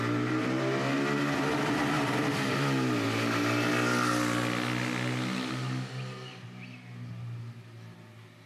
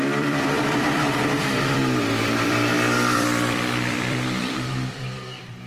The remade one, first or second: second